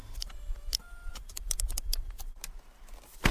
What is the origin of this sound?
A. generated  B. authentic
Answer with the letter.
B